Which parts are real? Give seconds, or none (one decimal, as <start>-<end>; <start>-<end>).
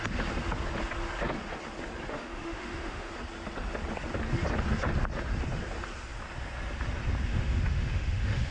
0.0-2.1; 3.1-7.3